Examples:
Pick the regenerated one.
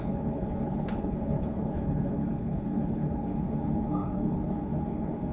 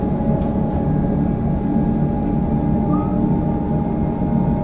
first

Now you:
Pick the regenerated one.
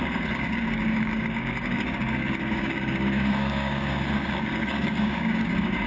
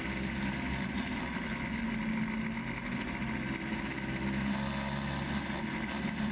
first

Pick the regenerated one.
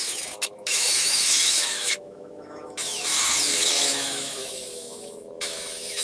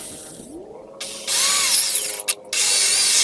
first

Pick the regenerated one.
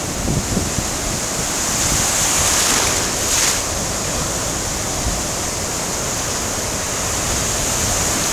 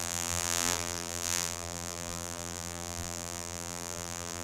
second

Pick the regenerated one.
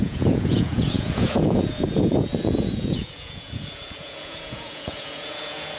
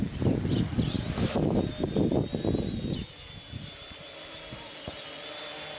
first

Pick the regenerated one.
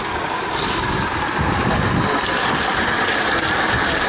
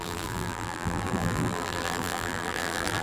second